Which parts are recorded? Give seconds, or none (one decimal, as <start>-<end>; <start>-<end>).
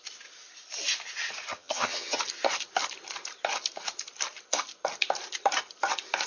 0.0-1.5; 2.2-6.3